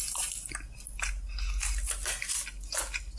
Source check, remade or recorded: recorded